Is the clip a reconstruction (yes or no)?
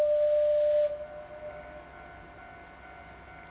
no